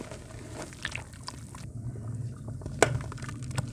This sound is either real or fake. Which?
real